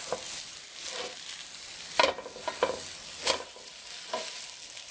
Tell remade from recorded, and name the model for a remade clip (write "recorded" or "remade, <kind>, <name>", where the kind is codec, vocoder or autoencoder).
recorded